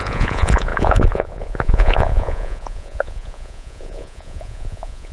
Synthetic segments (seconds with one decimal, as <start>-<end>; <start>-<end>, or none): 0.0-5.1